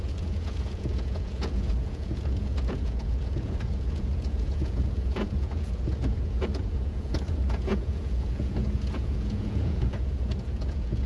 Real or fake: fake